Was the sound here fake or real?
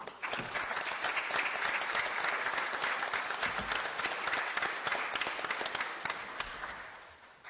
real